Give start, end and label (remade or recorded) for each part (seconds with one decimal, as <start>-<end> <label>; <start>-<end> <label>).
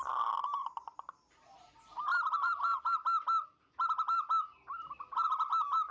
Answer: 0.0-5.9 recorded